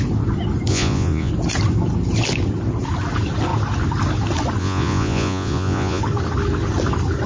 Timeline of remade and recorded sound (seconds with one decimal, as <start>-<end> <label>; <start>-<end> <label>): 0.0-0.7 recorded; 0.7-1.3 remade; 1.3-4.6 recorded; 4.6-6.0 remade; 6.0-7.3 recorded